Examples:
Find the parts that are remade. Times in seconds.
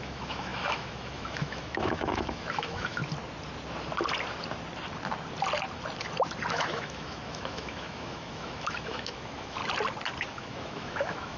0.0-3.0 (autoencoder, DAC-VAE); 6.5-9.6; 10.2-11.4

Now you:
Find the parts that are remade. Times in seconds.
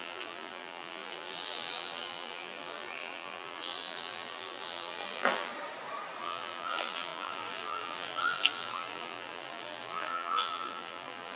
0.0-5.5 (vocoder, BigVGAN v2); 6.2-11.4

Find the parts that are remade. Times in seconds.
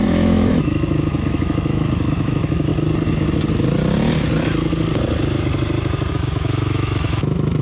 0.0-2.7 (autoencoder, DAC-VAE); 6.1-7.6